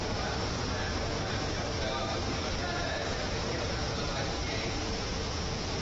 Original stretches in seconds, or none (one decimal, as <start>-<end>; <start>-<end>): 0.0-2.1